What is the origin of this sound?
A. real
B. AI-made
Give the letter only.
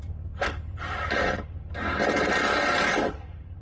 A